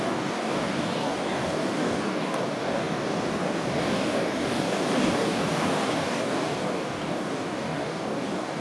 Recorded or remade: remade